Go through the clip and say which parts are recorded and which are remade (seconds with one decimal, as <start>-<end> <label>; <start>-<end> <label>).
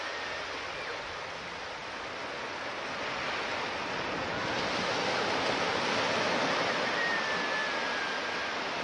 0.0-8.8 recorded